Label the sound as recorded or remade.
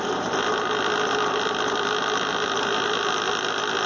recorded